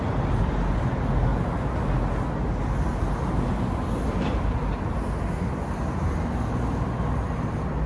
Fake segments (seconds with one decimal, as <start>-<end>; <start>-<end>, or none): none